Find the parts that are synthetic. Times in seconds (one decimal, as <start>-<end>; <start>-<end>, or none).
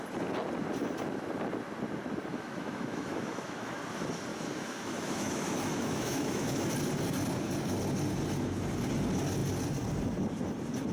2.3-3.8; 4.3-6.7